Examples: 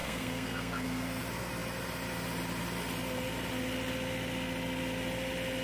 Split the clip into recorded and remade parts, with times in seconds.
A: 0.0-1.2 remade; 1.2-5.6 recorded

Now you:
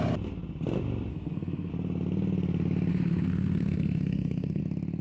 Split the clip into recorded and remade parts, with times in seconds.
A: 0.0-1.1 recorded; 1.1-1.7 remade; 1.7-2.9 recorded; 2.9-4.6 remade; 4.6-5.0 recorded

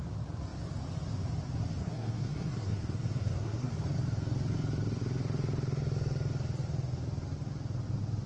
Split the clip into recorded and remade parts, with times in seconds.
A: 0.0-1.8 recorded; 1.8-3.7 remade; 3.7-8.3 recorded